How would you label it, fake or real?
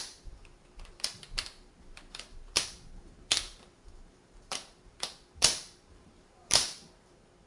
fake